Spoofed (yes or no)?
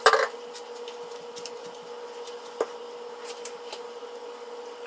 no